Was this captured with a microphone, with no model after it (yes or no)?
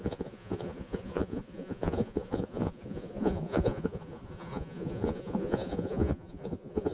no